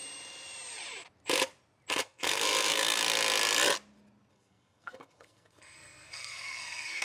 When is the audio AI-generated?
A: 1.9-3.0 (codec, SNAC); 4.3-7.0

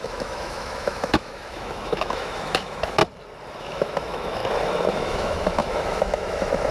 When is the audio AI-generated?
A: 0.0-3.0 (autoencoder, DAC-VAE); 3.6-4.4; 4.9-6.7

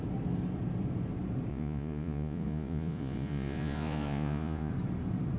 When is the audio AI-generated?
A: 1.5-4.7 (vocoder, Vocos)

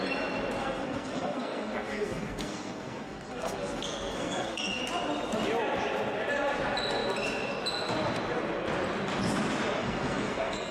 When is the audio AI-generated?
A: 0.6-4.8 (codec, SNAC); 9.8-10.7